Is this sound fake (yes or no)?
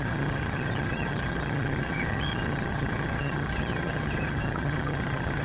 yes